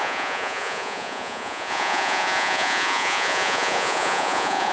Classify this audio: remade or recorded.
remade